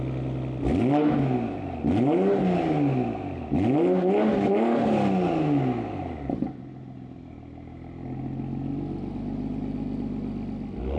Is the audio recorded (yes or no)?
yes